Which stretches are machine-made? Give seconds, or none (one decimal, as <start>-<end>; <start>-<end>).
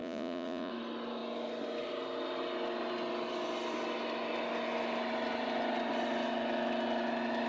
0.0-0.7